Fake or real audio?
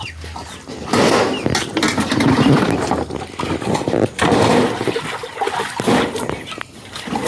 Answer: real